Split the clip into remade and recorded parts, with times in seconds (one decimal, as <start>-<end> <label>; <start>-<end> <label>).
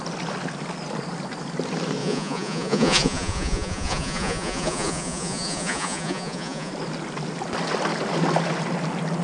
0.0-2.0 recorded; 2.0-6.7 remade; 6.7-9.2 recorded